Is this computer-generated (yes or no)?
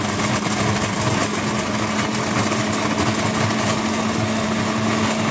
no